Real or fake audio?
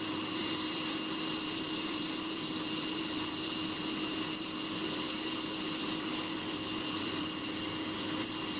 fake